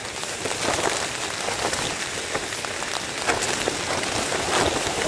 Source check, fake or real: real